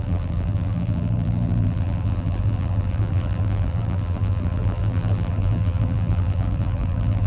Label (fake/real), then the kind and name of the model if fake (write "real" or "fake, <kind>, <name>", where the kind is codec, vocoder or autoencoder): fake, vocoder, BigVGAN v2